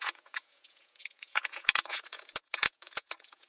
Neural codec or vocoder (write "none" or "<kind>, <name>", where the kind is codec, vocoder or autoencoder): vocoder, Vocos